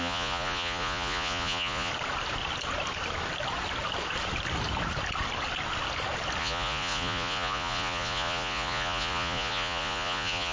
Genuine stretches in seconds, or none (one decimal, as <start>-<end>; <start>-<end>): 1.9-6.4